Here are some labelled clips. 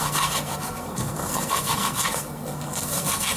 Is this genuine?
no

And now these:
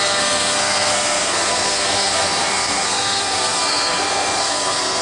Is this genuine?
no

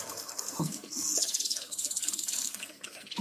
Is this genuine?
no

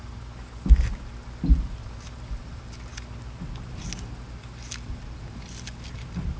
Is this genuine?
yes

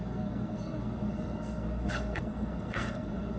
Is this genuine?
no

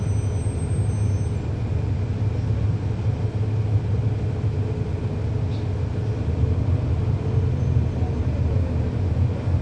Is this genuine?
yes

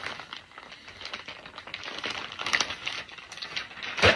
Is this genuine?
yes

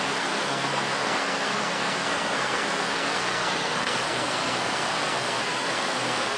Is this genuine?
no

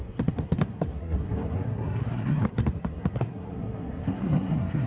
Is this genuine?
no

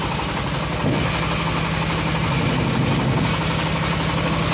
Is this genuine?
yes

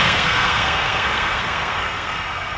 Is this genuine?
no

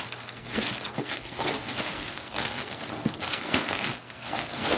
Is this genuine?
no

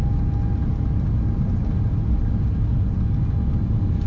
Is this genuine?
yes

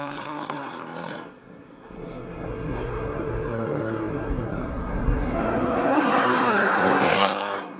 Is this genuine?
no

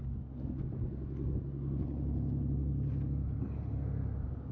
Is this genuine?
yes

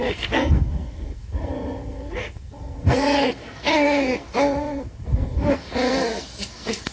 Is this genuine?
no